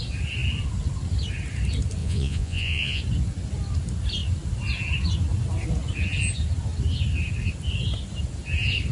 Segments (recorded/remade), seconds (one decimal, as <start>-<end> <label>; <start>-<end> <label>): 0.0-2.0 recorded; 2.0-3.0 remade; 3.0-8.9 recorded